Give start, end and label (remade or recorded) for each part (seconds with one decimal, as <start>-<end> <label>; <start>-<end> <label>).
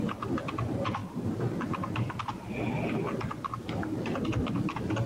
0.0-1.0 recorded; 1.0-3.6 remade; 3.6-5.1 recorded